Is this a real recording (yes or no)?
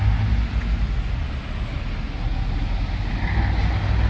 yes